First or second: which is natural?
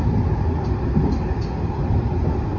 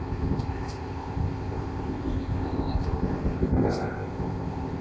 first